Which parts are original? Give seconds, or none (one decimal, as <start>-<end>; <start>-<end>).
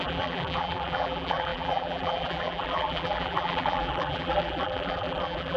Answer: none